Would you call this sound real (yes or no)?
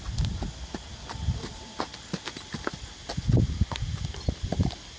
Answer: yes